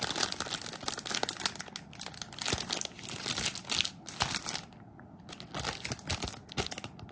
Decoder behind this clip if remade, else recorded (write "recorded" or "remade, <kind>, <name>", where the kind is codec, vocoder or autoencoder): recorded